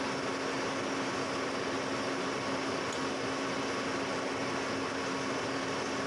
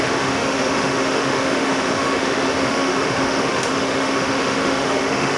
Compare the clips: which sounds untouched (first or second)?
first